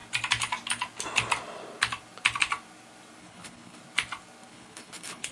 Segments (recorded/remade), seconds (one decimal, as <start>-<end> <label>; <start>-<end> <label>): 0.0-3.2 recorded; 3.2-3.8 remade; 3.8-4.5 recorded; 4.5-5.3 remade